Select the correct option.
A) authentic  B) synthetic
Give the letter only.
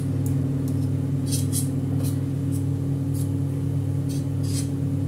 A